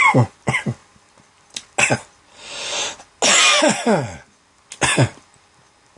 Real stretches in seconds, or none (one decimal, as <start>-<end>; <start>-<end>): 0.0-6.0

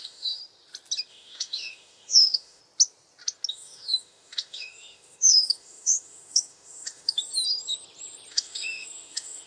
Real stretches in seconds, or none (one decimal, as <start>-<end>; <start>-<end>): 0.4-1.1; 2.6-3.5; 7.2-8.3

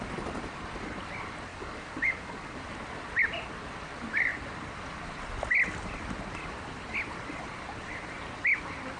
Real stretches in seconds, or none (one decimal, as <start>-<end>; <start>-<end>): 0.0-1.5; 2.6-9.0

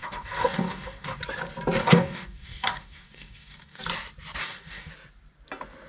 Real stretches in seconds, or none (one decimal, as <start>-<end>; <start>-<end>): 1.2-1.8; 3.8-4.4; 4.9-5.9

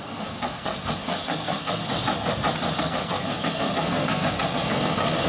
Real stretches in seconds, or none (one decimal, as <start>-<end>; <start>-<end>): 1.8-2.8

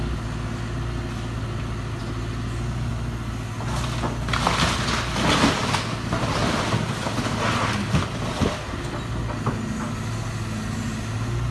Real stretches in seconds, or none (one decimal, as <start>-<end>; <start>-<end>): 0.0-11.5